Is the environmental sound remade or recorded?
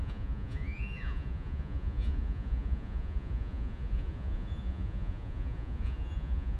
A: remade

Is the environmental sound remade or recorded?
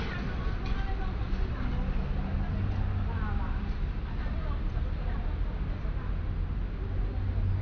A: recorded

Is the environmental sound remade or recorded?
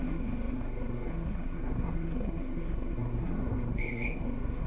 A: remade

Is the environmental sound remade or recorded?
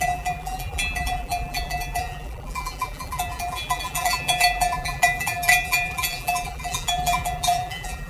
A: remade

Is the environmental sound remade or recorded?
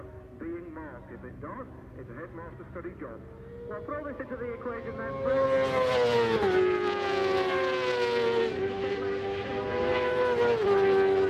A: recorded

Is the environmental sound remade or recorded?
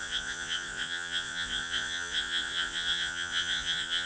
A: remade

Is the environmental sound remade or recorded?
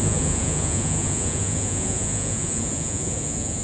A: remade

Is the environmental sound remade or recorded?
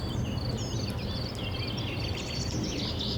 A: recorded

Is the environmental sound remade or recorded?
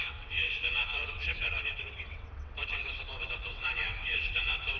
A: remade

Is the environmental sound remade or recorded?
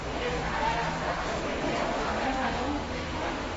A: remade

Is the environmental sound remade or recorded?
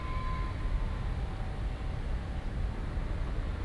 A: recorded